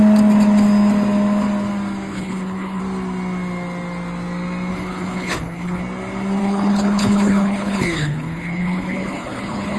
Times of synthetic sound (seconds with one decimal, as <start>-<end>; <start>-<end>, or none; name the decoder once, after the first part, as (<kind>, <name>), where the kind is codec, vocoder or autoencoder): 2.1-2.8 (codec, HILCodec); 4.7-5.8; 6.4-9.8